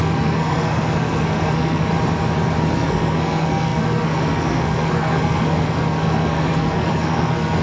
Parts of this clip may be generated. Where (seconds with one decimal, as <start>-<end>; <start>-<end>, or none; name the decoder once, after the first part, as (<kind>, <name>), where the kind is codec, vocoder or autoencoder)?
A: 0.0-1.9 (codec, SNAC); 2.6-7.6